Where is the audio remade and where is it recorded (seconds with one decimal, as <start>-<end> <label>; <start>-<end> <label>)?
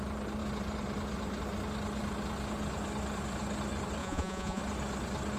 0.0-4.0 recorded; 4.0-4.6 remade; 4.6-5.4 recorded